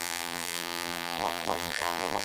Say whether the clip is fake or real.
fake